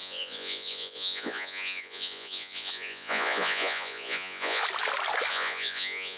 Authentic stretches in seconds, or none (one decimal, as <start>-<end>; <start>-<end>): 4.6-5.3